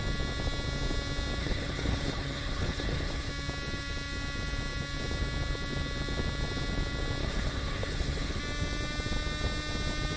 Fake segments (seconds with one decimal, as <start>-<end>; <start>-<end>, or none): 1.4-3.3; 7.2-8.4